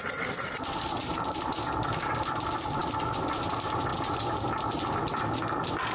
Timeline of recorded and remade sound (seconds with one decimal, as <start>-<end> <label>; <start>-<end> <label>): 0.0-1.0 recorded; 1.0-1.5 remade; 1.5-5.9 recorded